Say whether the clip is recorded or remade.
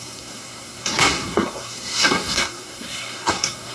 remade